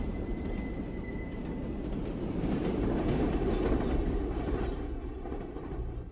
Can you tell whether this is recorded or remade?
recorded